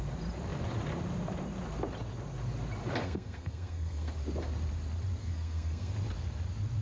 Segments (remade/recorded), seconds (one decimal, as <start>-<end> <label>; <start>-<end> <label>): 0.0-3.0 recorded; 3.0-4.1 remade; 4.1-5.2 recorded; 5.2-5.9 remade; 5.9-6.8 recorded